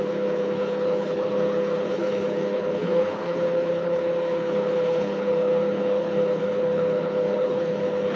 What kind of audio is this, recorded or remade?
remade